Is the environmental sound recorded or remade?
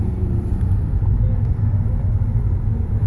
recorded